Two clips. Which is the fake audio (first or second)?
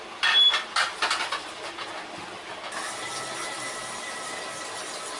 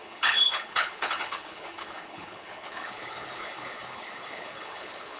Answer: second